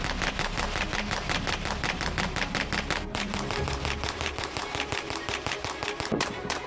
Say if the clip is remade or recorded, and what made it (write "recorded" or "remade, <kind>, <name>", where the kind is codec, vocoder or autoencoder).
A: remade, vocoder, BigVGAN v2